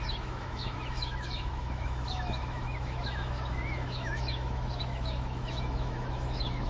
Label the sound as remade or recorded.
remade